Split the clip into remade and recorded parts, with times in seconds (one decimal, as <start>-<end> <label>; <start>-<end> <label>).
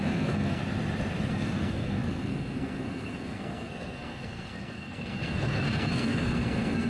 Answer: 0.0-0.6 remade; 0.6-1.3 recorded; 1.3-6.9 remade